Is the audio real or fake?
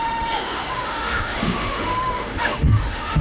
fake